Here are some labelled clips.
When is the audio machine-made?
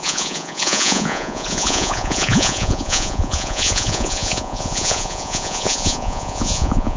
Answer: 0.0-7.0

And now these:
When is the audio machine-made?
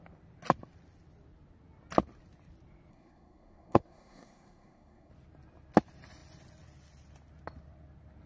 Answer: 2.9-5.1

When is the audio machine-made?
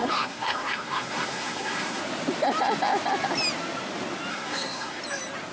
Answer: 0.0-2.0; 4.3-5.0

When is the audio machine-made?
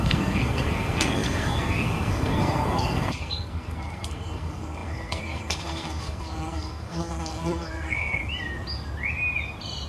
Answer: 0.0-8.2